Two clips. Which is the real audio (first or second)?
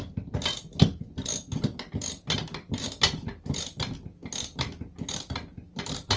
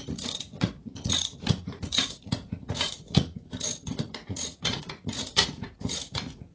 first